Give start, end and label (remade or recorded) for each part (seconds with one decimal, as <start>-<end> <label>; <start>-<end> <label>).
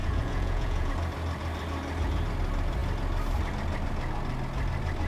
0.0-0.9 remade; 0.9-5.1 recorded